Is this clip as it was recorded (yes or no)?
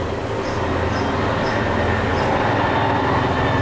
yes